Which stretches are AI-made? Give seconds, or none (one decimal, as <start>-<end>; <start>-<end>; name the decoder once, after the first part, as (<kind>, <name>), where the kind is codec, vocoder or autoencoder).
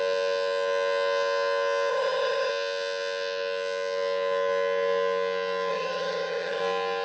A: 1.9-2.5 (vocoder, HiFi-GAN); 5.7-6.6